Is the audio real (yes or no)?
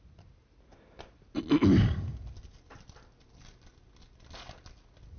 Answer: yes